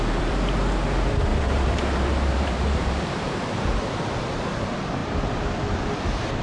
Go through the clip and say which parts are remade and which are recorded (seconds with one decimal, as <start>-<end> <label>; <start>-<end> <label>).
0.0-1.3 recorded; 1.3-4.1 remade; 4.1-6.4 recorded